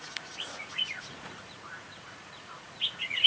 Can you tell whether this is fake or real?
fake